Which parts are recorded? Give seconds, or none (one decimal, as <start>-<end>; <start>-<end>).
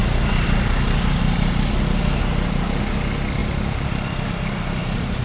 0.0-5.2